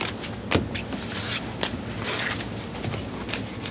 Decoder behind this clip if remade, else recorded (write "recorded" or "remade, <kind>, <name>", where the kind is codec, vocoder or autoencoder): recorded